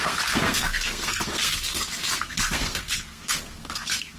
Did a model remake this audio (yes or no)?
yes